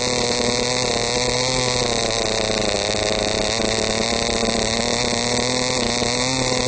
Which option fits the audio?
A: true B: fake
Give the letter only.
A